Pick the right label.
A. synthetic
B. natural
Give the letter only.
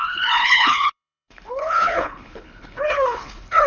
A